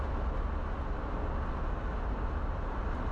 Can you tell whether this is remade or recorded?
recorded